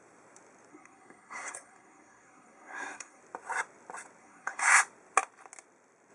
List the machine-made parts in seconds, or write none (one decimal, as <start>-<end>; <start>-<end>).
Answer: 0.7-3.2; 4.2-4.8